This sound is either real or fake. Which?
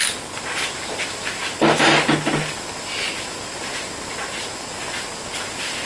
real